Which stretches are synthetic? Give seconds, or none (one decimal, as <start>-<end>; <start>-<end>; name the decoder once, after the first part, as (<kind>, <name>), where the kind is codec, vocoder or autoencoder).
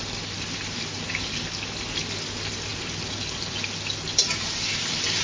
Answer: none